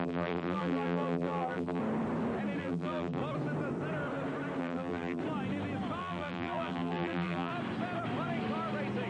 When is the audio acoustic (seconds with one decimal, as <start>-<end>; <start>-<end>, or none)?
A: 1.8-2.6; 3.2-4.6; 5.2-6.0; 7.5-9.1